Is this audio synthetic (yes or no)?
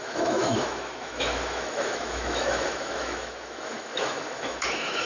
yes